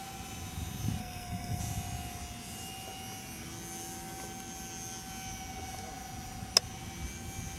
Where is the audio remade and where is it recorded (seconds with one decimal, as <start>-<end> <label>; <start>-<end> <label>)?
0.0-1.0 recorded; 1.0-1.6 remade; 1.6-7.6 recorded